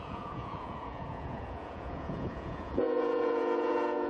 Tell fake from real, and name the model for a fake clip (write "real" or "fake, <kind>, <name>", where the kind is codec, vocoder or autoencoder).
fake, vocoder, Vocos